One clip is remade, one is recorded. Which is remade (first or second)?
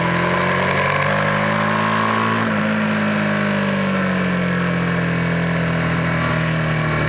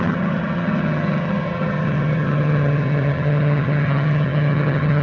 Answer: second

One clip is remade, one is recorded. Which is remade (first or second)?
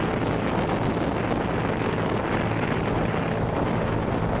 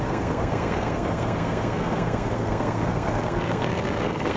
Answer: second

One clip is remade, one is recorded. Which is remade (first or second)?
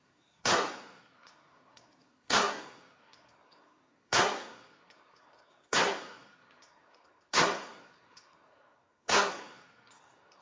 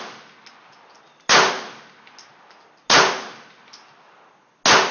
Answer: first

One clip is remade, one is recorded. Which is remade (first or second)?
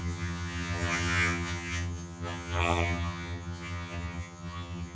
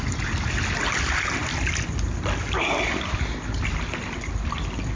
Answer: first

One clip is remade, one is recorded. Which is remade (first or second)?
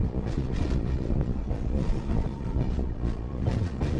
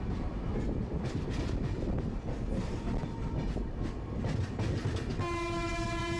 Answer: first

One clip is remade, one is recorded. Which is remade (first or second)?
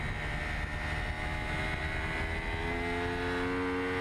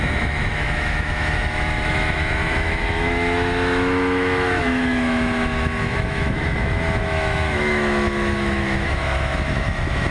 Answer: second